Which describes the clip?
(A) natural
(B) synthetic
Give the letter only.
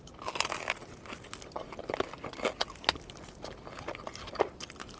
A